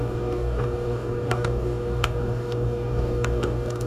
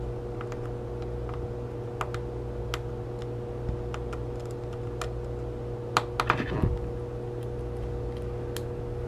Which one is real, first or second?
second